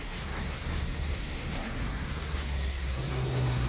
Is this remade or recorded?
remade